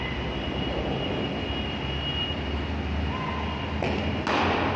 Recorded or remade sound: recorded